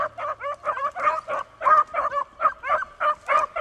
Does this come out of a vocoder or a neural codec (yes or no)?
no